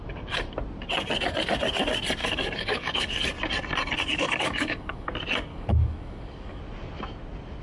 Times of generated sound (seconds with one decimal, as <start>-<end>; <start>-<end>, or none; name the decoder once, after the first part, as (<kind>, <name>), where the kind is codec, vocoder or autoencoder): 2.2-3.2 (codec, DAC); 4.1-5.1; 5.5-6.6